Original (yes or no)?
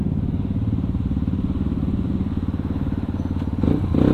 yes